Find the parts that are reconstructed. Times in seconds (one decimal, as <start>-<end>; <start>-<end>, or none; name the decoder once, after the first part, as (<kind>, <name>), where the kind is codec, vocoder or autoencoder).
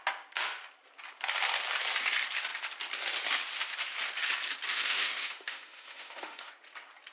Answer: 4.7-6.5 (autoencoder, DAC-VAE)